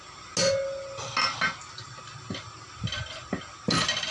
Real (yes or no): yes